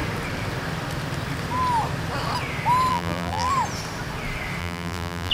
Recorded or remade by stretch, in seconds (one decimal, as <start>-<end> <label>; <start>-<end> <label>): 0.0-2.9 recorded; 2.9-3.5 remade; 3.5-4.6 recorded; 4.6-5.3 remade